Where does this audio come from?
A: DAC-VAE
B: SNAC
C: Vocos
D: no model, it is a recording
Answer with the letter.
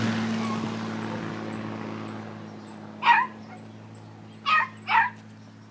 D